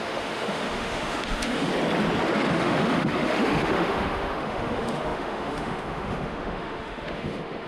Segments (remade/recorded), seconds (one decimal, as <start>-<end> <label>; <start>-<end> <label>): 0.0-1.7 remade; 1.7-2.5 recorded; 2.5-7.7 remade